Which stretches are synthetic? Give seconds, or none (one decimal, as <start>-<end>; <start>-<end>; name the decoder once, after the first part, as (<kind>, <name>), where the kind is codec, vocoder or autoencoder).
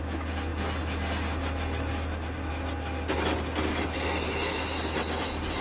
none